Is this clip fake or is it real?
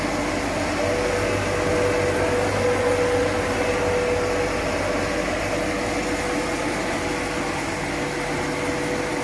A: real